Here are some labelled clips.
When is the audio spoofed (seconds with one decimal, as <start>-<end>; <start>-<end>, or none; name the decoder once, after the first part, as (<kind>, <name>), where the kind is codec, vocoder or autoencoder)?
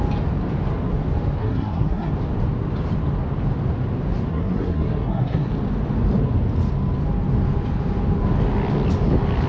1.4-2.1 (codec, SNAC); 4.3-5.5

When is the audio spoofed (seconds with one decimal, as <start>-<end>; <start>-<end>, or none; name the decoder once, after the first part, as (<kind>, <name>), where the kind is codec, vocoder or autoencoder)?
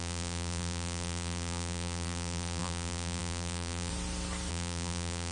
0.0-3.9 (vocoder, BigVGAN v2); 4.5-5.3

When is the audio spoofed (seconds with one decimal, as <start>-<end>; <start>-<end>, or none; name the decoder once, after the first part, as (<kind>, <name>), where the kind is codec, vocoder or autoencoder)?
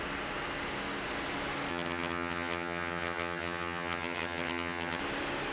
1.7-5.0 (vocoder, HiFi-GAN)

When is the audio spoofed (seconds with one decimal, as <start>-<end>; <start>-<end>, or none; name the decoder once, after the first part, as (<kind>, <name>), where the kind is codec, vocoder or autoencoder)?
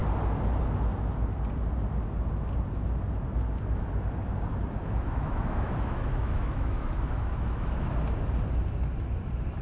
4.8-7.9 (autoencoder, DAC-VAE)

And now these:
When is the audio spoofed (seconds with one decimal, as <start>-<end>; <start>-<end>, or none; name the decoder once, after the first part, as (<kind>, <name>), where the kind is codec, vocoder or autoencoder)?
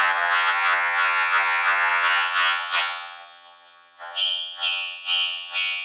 0.0-5.8 (vocoder, HiFi-GAN)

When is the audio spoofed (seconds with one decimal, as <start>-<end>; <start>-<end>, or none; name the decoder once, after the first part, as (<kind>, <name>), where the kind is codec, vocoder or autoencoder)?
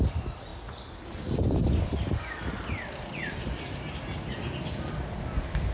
none